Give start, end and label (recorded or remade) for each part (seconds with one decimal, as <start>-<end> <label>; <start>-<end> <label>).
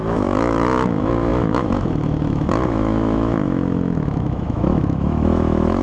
0.0-5.8 remade